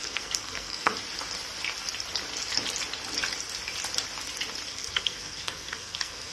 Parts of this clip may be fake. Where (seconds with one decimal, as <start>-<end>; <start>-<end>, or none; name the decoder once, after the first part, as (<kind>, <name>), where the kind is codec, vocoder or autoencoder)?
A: 0.0-0.9 (codec, SNAC); 4.7-6.3